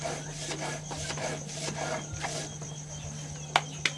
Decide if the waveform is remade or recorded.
recorded